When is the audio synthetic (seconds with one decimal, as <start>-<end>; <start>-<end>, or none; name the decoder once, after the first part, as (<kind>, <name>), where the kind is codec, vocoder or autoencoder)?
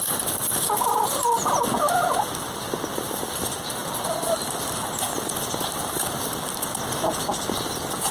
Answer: none